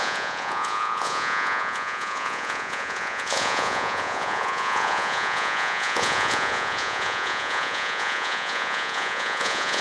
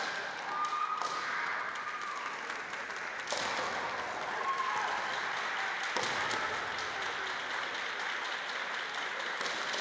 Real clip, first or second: second